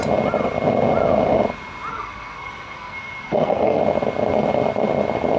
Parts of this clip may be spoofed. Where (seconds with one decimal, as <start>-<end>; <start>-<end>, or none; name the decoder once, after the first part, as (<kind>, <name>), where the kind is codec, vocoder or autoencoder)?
1.9-3.8 (codec, SNAC)